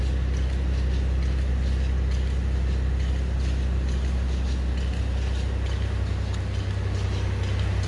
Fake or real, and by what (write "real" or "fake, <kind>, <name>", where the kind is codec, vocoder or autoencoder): real